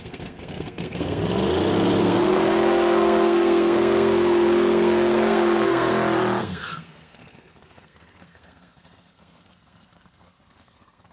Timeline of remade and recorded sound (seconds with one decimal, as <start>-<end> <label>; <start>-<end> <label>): 0.0-1.2 remade; 1.2-2.0 recorded; 2.0-5.9 remade; 5.9-6.4 recorded; 6.4-11.1 remade